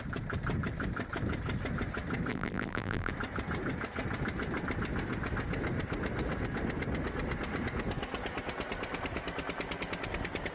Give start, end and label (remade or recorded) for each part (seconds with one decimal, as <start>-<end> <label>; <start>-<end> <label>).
0.0-2.3 recorded; 2.3-3.1 remade; 3.1-10.5 recorded